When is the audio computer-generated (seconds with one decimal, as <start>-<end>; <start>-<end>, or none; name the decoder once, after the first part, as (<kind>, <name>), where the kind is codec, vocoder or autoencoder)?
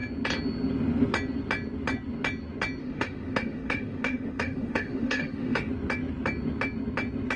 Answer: 2.8-5.7 (autoencoder, DAC-VAE)